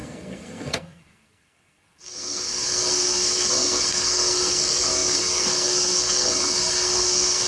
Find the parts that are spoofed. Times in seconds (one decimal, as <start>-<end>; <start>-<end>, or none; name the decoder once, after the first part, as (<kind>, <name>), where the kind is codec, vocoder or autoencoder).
0.0-7.5 (codec, SNAC)